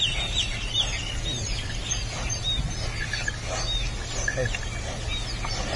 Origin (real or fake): real